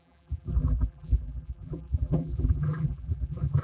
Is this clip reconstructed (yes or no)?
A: yes